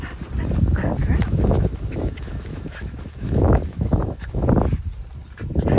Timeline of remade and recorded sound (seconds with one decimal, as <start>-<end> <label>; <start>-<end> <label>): 0.0-1.0 recorded; 1.0-4.5 remade; 4.5-5.8 recorded